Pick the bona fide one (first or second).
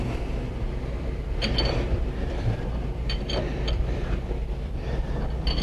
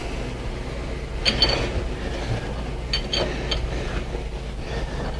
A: second